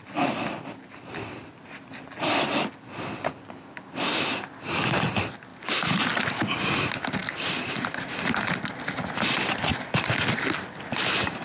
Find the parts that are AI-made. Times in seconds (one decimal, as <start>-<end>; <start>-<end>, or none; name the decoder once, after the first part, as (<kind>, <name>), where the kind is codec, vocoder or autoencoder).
5.5-6.2 (vocoder, BigVGAN v2); 7.2-8.1